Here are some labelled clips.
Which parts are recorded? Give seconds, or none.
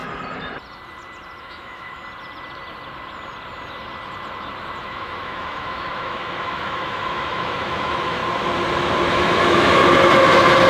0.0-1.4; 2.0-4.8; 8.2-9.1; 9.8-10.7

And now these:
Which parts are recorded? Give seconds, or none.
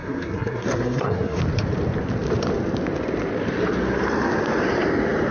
1.4-5.3